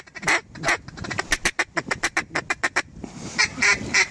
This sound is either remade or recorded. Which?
recorded